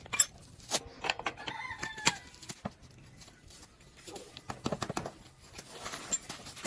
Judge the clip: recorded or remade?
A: recorded